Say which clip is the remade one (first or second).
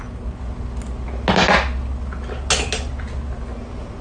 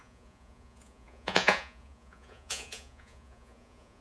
second